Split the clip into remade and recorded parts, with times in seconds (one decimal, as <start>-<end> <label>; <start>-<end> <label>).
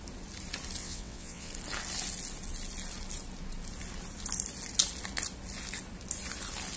0.0-0.8 recorded; 0.8-1.5 remade; 1.5-6.8 recorded